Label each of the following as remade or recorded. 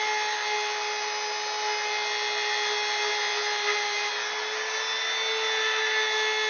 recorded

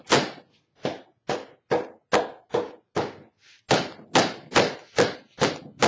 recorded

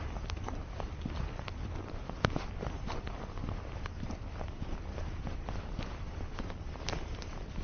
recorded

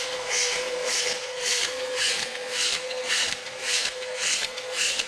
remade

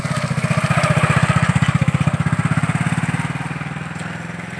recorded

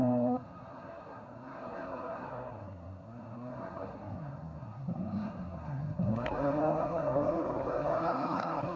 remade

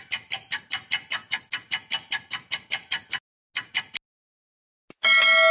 recorded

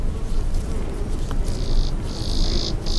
recorded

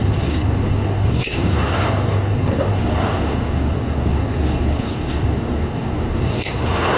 remade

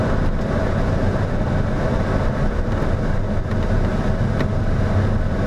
recorded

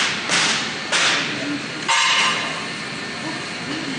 recorded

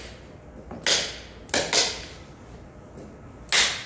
recorded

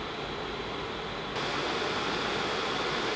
recorded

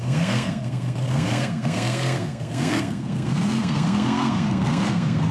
remade